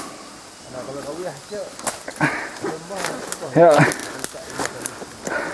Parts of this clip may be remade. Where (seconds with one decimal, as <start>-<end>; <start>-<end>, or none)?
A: 0.0-1.3; 2.4-4.0